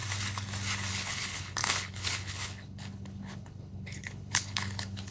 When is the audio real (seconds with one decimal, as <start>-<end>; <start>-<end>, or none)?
0.0-0.9